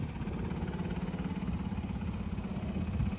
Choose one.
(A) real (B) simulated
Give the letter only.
A